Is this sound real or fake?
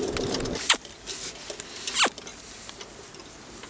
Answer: real